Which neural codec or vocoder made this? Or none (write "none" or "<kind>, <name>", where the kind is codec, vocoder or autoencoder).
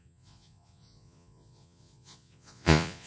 vocoder, Vocos